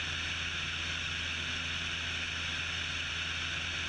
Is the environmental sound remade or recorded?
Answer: recorded